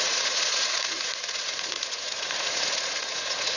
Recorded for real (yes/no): no